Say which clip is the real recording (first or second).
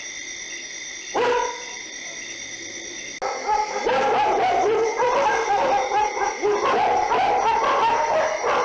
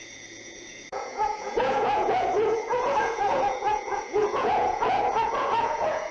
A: first